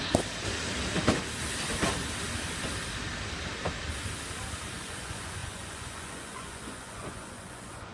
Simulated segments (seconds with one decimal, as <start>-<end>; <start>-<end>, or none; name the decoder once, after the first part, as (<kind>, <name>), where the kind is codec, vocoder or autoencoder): 4.7-7.9 (vocoder, Vocos)